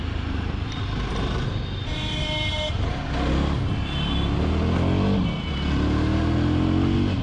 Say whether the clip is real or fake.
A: real